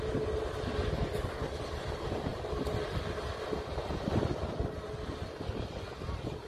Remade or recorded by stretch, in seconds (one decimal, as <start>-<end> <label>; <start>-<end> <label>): 0.0-6.5 recorded